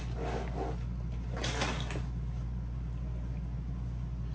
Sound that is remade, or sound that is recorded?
recorded